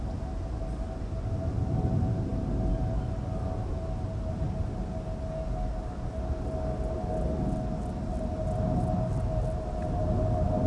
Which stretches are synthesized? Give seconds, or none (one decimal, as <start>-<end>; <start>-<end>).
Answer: none